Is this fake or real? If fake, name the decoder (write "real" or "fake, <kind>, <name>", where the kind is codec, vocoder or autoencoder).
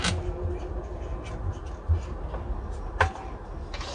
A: real